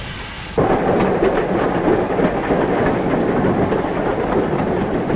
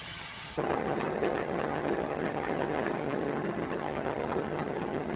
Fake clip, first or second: second